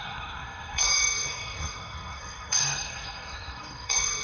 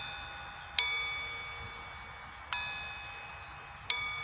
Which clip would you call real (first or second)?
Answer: second